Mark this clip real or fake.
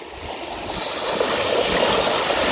real